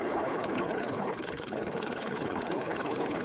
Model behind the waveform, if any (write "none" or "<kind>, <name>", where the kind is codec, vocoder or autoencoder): codec, HILCodec